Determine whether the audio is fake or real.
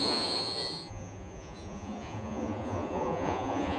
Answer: fake